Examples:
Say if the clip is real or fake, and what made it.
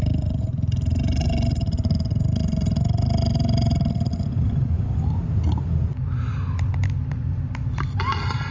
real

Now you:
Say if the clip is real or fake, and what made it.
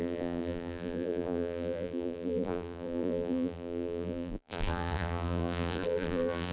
fake, vocoder, BigVGAN v2